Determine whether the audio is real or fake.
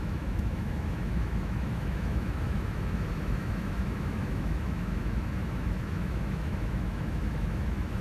fake